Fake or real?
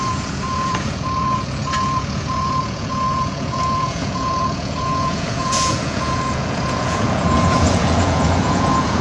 fake